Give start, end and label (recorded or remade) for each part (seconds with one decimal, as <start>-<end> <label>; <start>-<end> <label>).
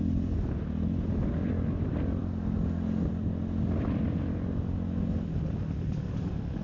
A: 0.0-6.6 recorded